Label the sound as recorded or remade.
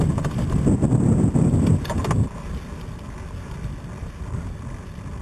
recorded